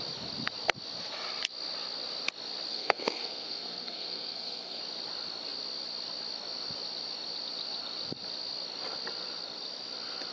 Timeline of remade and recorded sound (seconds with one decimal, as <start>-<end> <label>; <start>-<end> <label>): 0.0-2.7 recorded; 2.7-4.8 remade; 4.8-10.3 recorded